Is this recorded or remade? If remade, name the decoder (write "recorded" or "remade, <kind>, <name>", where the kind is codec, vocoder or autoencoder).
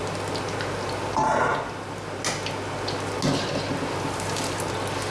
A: recorded